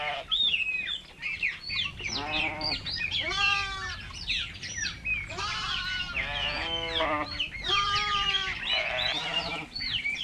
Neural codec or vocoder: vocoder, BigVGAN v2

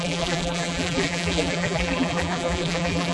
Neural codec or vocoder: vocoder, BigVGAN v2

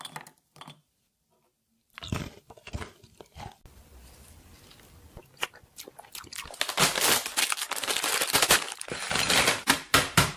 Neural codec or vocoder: vocoder, BigVGAN v2